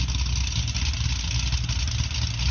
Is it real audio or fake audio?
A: real